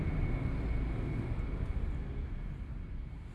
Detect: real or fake real